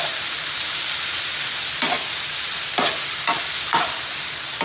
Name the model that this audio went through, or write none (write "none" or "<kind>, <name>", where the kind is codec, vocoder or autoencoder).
none